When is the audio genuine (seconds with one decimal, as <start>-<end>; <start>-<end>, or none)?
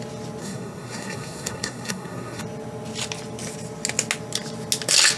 0.0-0.4; 2.4-5.2